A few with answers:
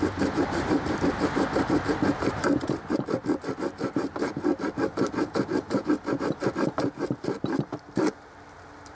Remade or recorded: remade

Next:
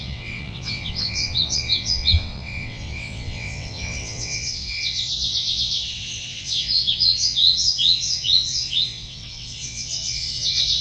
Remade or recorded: remade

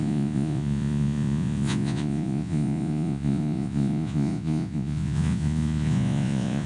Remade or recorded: remade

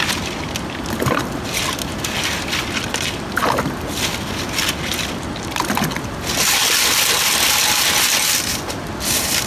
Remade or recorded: recorded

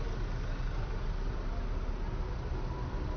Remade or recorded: recorded